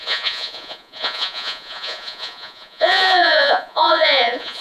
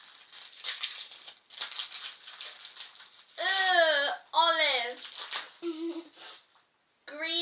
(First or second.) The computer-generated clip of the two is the first